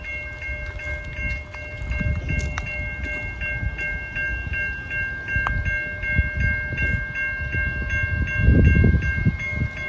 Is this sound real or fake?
real